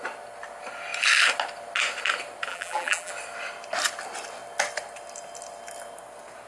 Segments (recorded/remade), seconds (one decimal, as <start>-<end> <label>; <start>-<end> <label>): 0.0-2.5 recorded; 2.5-3.1 remade; 3.1-6.5 recorded